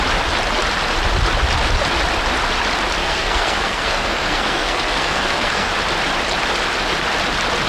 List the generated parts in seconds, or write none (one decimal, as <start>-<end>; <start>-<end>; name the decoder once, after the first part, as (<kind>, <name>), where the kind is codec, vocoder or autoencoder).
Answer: 3.0-5.7 (codec, SNAC)